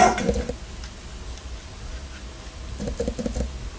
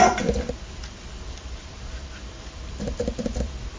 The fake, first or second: second